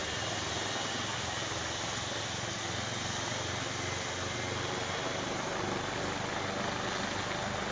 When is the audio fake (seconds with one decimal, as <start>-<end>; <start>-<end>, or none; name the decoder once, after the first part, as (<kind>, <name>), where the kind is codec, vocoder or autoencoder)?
none